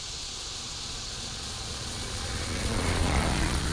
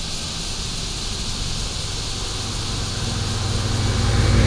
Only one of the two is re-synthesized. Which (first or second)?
first